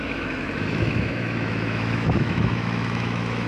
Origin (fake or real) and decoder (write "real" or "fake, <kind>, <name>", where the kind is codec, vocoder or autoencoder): fake, autoencoder, DAC-VAE